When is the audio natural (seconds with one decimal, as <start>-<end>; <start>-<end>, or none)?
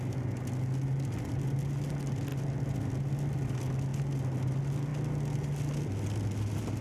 0.0-6.8